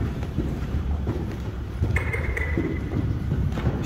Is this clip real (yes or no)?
no